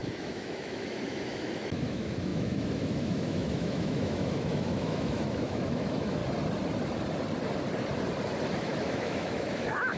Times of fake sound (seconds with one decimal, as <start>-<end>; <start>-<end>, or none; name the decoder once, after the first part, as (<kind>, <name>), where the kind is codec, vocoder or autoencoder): 0.0-6.2 (autoencoder, DAC-VAE); 8.6-10.0